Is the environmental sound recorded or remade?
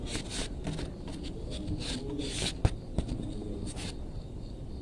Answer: recorded